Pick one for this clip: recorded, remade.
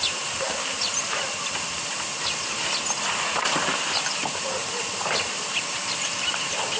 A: recorded